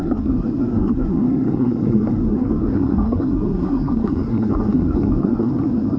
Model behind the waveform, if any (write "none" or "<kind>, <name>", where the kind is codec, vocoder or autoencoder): codec, SNAC